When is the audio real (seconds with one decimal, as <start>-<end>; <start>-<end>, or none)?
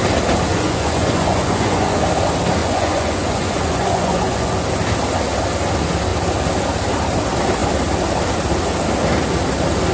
0.0-0.5; 2.0-2.6; 4.5-9.9